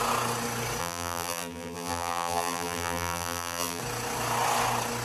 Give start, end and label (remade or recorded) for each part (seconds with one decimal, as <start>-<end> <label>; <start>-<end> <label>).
0.0-0.8 recorded; 0.8-3.8 remade; 3.8-5.0 recorded